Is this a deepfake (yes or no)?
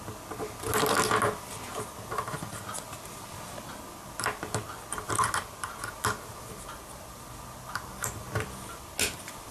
no